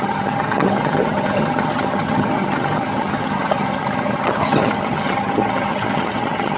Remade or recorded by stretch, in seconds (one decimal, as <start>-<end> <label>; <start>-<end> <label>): 0.0-6.6 remade